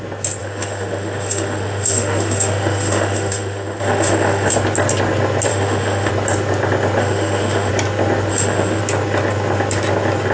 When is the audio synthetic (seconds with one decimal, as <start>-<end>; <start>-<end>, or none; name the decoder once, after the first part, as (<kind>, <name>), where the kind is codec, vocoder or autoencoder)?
0.4-4.5 (autoencoder, DAC-VAE); 5.5-6.1; 7.0-7.7; 8.3-8.8